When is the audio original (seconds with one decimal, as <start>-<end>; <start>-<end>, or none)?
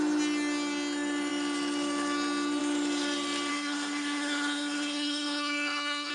0.0-3.5